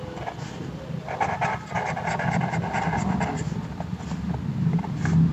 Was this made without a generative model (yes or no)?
yes